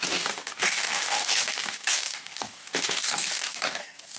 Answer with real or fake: fake